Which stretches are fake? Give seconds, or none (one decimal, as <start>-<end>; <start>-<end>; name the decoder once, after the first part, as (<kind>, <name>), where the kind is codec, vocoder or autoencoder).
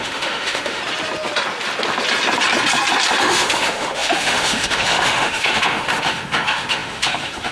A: 0.0-0.8 (autoencoder, DAC-VAE); 3.2-7.5